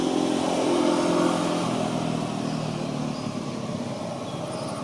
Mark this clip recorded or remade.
recorded